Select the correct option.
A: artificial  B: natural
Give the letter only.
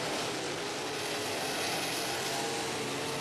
B